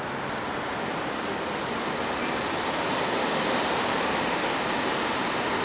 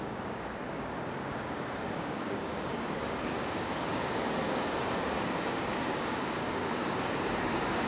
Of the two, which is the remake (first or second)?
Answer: second